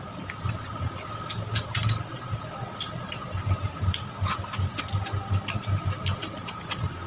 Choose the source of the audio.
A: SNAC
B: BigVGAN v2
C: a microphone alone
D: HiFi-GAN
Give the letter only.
C